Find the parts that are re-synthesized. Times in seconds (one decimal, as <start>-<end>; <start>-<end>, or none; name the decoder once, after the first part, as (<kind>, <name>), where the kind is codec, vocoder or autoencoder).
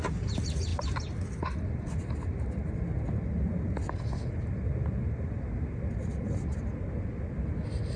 none